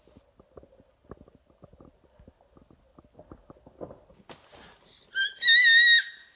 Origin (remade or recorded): recorded